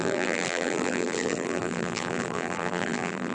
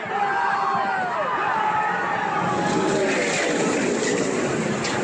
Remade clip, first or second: first